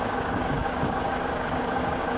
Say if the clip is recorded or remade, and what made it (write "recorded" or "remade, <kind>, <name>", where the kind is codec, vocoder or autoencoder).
remade, codec, DAC